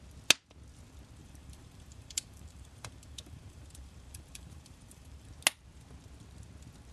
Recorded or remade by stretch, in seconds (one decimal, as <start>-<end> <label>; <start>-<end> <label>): 0.0-1.2 recorded; 1.2-5.3 remade; 5.3-6.9 recorded